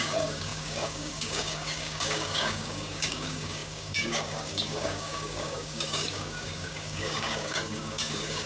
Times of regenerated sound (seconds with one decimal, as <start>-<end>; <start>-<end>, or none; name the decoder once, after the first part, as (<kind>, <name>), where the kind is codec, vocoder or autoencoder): 0.0-8.5 (codec, DAC)